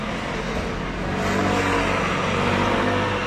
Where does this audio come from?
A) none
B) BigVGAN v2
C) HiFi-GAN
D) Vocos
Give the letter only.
A